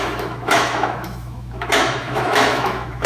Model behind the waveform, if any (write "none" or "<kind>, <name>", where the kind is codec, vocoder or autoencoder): autoencoder, DAC-VAE